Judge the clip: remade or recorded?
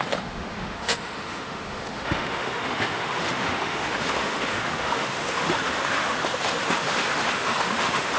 remade